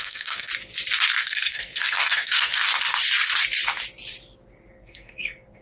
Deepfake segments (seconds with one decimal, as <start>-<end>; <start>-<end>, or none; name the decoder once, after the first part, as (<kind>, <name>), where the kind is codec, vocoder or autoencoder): 0.0-0.5 (codec, SNAC); 1.2-2.7; 4.7-5.6